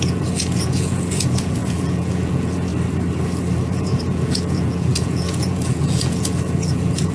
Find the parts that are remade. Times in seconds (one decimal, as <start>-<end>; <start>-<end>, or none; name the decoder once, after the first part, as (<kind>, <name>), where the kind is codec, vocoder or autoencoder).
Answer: 0.0-2.7 (vocoder, Vocos); 3.7-7.1

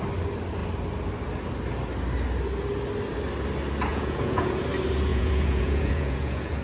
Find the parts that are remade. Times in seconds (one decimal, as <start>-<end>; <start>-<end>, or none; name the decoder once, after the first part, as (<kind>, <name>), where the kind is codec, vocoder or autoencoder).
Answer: 3.9-4.6 (vocoder, Vocos); 5.1-6.6

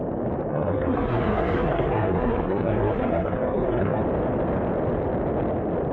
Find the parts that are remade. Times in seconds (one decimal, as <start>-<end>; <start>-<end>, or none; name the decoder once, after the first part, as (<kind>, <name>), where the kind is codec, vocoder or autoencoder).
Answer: 0.5-4.0 (codec, SNAC)

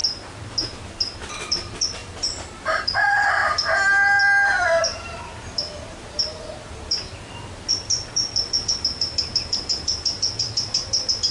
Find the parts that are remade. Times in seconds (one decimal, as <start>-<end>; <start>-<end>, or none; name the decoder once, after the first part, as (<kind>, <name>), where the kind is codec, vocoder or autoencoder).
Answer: 1.5-11.3 (vocoder, BigVGAN v2)

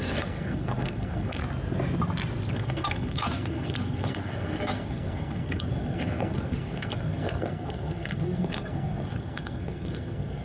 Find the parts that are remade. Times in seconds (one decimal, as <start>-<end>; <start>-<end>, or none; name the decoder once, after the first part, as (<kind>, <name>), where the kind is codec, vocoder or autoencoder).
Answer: 0.0-1.4 (codec, SNAC); 2.5-10.4

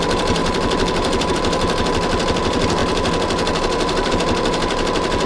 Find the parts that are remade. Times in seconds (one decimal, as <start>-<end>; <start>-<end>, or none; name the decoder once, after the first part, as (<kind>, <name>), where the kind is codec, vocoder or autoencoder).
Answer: 0.0-5.3 (vocoder, BigVGAN v2)

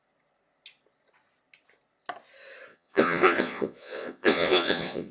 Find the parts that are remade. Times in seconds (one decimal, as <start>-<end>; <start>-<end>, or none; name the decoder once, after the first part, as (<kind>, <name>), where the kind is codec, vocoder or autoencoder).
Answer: 2.7-5.1 (vocoder, Vocos)

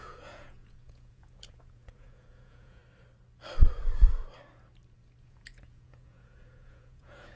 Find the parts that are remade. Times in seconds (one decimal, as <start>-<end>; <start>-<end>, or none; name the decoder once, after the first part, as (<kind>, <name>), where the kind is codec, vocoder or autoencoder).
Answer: 0.0-2.8 (vocoder, Vocos); 5.2-7.4